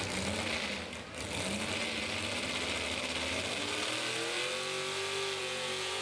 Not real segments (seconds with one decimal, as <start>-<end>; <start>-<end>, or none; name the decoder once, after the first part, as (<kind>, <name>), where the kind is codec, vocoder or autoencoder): 5.4-6.0 (vocoder, Vocos)